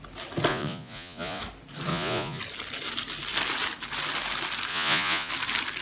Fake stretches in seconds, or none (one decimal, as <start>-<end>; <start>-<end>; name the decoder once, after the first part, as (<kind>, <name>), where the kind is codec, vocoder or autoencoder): 0.5-1.4 (vocoder, Vocos); 1.9-2.4; 4.7-5.3